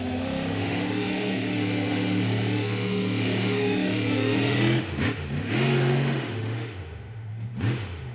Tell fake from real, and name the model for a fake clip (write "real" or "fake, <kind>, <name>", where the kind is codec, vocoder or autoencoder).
fake, autoencoder, DAC-VAE